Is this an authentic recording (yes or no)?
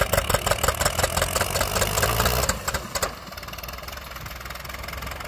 yes